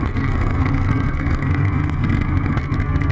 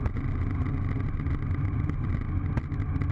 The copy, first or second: first